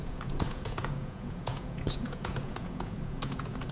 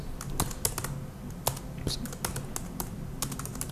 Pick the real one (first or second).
second